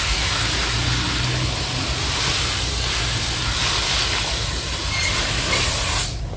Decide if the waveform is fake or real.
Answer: real